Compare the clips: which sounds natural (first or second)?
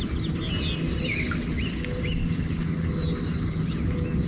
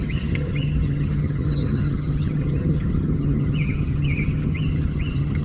first